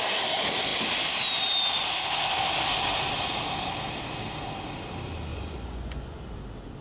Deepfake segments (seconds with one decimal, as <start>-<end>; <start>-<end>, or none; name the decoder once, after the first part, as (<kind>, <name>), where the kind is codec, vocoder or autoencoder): 5.3-6.2 (vocoder, Vocos)